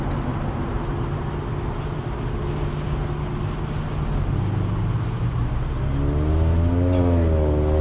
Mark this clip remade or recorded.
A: recorded